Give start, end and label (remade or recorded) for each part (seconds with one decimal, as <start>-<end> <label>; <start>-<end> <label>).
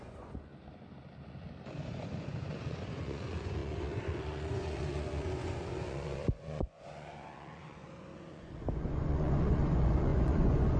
0.0-0.5 remade; 0.5-1.8 recorded; 1.8-10.8 remade